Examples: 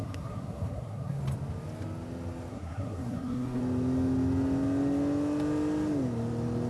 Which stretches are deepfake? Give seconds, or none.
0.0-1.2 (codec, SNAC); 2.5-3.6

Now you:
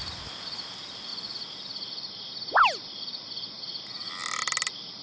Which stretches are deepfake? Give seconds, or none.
none

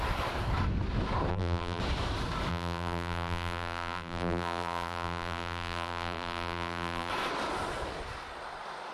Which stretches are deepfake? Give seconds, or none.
1.3-1.8 (vocoder, BigVGAN v2); 2.5-7.1

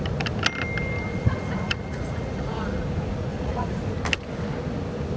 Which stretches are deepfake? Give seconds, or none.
1.1-2.8 (vocoder, Vocos); 3.3-3.8

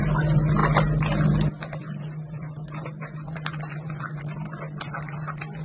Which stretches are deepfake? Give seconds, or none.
none